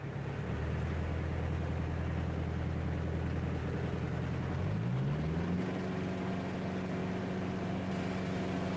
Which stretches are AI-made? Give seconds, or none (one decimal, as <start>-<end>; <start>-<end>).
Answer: 7.0-7.9